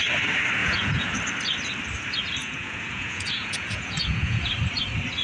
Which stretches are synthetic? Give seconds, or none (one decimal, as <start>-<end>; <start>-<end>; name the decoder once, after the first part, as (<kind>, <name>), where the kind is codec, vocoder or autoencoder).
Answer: 0.6-1.2 (vocoder, Vocos); 2.4-4.5